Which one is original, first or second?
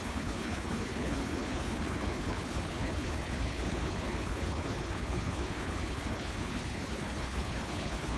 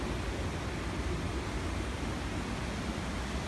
second